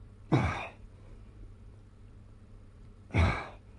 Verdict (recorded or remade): remade